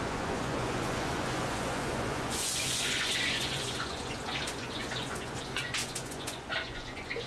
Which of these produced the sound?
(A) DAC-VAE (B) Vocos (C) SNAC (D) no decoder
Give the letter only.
B